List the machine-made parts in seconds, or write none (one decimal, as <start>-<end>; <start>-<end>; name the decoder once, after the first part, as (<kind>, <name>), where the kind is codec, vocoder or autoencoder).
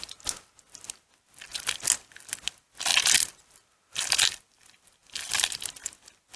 none